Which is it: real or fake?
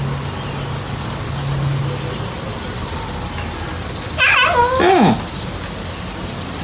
real